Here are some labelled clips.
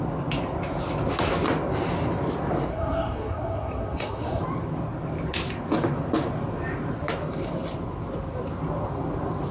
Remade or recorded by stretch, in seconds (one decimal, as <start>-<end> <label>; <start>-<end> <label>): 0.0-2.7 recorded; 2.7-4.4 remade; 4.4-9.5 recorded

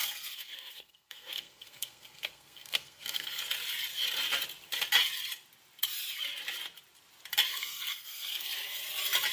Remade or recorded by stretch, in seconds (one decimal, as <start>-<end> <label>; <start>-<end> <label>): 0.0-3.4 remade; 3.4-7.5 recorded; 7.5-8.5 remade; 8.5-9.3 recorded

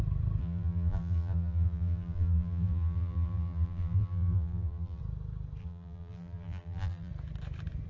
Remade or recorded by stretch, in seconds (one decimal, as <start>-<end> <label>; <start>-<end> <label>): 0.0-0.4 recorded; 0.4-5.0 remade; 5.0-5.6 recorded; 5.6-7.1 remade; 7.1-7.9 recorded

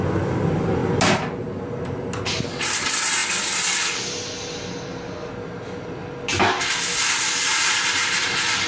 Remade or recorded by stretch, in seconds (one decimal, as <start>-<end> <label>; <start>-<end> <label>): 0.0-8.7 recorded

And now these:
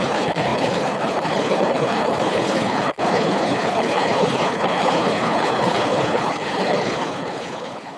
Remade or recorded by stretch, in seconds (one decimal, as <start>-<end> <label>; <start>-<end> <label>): 0.0-8.0 remade